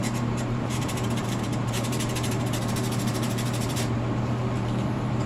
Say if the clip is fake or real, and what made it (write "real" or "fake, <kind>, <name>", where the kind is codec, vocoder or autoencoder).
fake, vocoder, BigVGAN v2